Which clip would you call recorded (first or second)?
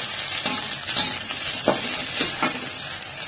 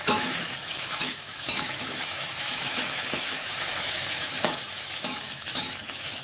first